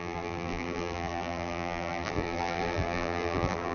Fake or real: fake